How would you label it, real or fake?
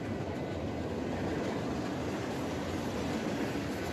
real